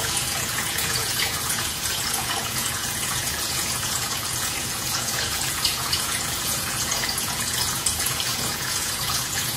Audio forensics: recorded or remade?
remade